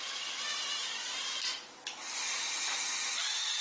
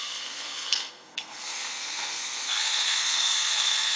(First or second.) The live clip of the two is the first